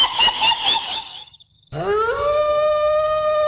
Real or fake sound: fake